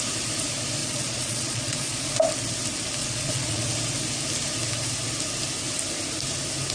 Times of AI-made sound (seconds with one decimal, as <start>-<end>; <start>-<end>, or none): 0.8-2.1; 3.0-3.6